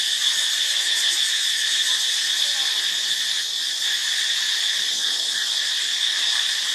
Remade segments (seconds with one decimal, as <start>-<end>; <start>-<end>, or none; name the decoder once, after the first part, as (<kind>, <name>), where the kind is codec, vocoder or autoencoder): none